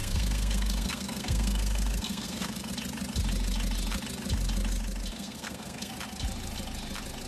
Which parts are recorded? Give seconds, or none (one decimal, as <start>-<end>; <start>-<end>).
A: 2.7-5.1; 5.9-7.3

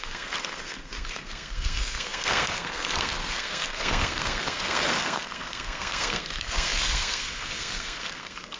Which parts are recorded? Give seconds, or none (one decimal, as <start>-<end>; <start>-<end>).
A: none

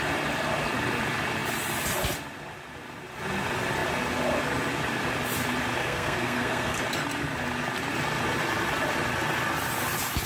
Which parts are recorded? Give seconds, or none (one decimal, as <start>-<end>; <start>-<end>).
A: 0.0-5.8; 6.8-10.3